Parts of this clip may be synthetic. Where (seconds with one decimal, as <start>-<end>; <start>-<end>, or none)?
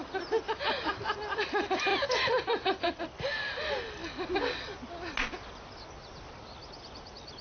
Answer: none